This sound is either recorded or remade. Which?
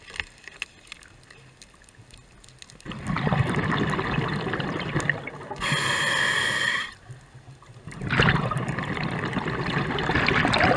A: recorded